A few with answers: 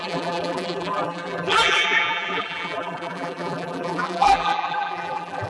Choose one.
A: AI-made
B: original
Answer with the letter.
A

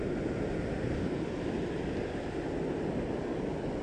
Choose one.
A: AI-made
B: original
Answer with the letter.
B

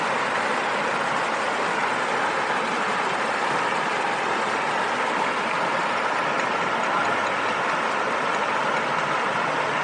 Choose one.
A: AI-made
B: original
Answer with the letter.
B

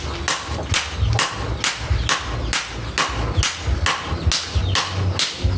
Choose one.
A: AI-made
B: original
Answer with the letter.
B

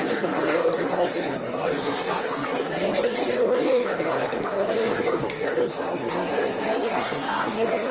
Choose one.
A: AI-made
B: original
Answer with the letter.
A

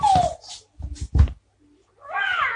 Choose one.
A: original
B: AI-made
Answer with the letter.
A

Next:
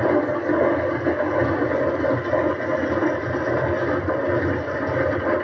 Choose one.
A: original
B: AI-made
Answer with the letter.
A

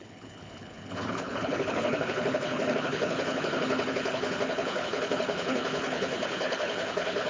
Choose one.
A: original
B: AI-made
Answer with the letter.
B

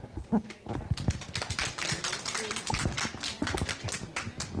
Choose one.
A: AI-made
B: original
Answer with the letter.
B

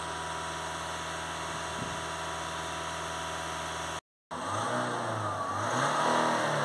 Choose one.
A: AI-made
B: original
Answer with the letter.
B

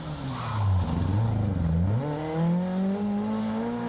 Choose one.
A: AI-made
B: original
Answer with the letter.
B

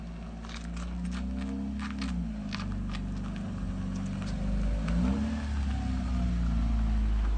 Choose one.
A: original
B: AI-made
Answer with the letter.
A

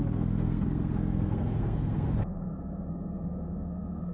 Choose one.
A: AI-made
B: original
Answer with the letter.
A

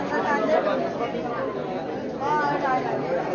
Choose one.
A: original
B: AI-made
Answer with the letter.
A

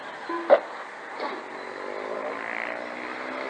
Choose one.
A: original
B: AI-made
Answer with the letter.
A